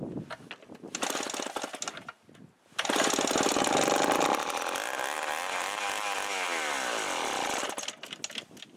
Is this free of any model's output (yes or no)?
yes